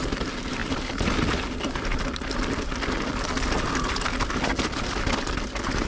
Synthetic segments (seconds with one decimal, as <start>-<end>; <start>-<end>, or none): none